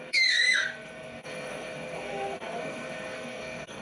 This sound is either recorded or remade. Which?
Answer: remade